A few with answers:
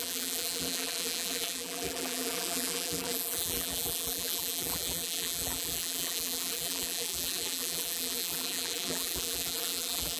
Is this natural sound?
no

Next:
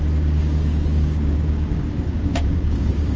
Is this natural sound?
no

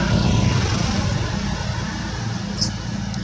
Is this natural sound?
yes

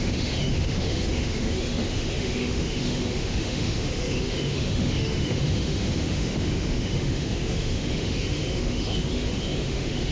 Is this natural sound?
no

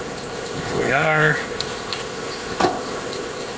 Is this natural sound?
no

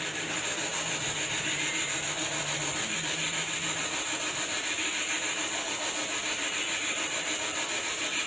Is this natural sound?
no